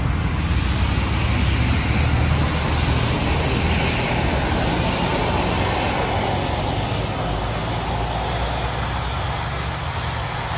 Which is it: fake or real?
real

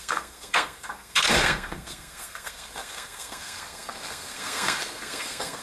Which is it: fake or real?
fake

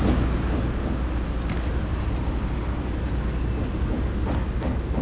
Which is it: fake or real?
real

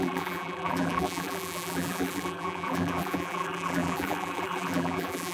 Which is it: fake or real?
fake